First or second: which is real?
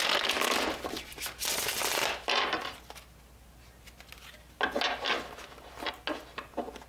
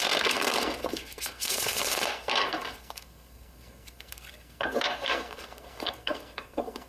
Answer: first